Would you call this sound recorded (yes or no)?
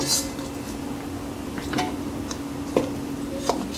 yes